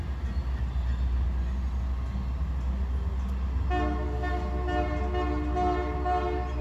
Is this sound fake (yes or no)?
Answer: no